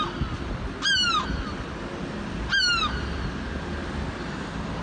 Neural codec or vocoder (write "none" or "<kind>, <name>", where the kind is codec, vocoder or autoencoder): none